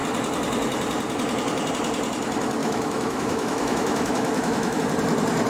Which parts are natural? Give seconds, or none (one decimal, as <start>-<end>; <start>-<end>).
0.0-2.6; 4.8-5.5